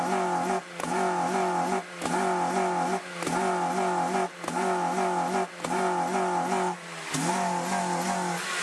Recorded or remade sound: recorded